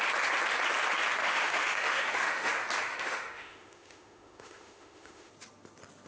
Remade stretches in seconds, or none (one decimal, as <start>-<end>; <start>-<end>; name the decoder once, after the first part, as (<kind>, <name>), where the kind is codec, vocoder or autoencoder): 1.2-2.5 (autoencoder, DAC-VAE); 2.9-5.3